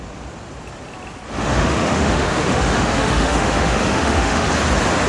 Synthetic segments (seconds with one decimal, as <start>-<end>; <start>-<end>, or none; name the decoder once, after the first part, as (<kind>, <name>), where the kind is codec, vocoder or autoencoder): 1.4-4.5 (autoencoder, DAC-VAE)